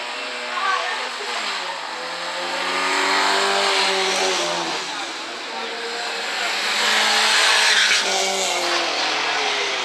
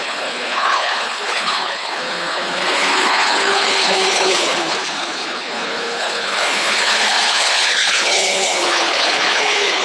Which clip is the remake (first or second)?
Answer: second